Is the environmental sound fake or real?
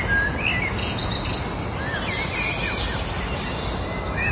real